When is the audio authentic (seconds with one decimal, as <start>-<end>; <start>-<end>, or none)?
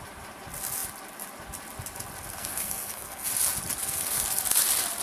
0.0-2.3; 3.3-3.8; 4.4-5.0